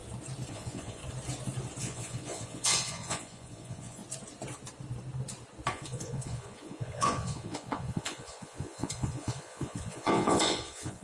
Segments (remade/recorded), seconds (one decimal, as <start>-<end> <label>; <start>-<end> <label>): 0.0-0.5 recorded; 0.5-1.0 remade; 1.0-1.8 recorded; 1.8-4.0 remade; 4.0-5.7 recorded; 5.7-11.0 remade